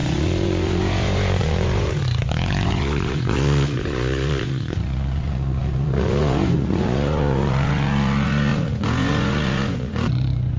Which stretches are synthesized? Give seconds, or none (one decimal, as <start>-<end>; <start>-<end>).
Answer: 0.0-10.6